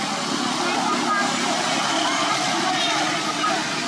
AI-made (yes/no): no